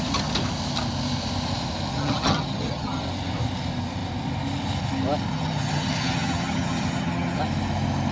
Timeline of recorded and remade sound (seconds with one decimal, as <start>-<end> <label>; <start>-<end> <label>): 0.0-1.9 recorded; 1.9-3.0 remade; 3.0-5.3 recorded; 5.3-7.4 remade; 7.4-8.1 recorded

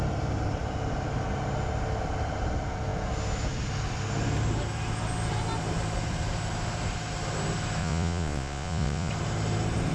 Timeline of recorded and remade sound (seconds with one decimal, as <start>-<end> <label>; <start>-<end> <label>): 0.0-7.8 recorded; 7.8-9.1 remade; 9.1-9.9 recorded

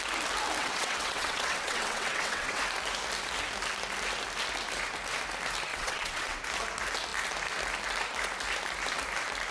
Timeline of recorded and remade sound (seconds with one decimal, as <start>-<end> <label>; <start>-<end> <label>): 0.0-0.6 recorded; 0.6-2.6 remade; 2.6-5.7 recorded; 5.7-6.4 remade; 6.4-9.5 recorded

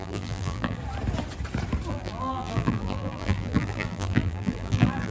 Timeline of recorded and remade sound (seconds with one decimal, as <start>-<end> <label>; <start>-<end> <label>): 0.0-0.8 remade; 0.8-1.9 recorded; 1.9-5.1 remade

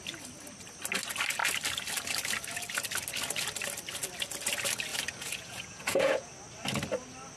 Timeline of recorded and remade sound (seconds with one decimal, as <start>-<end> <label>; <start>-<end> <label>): 0.0-4.9 recorded; 4.9-6.3 remade; 6.3-7.4 recorded

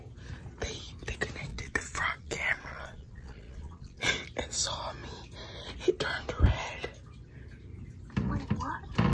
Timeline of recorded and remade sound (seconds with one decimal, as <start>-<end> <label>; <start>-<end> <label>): 0.0-1.5 recorded; 1.5-4.1 remade; 4.1-9.1 recorded

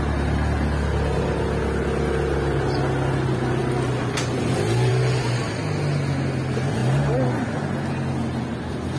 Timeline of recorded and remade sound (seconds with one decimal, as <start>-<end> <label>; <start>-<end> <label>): 0.0-9.0 recorded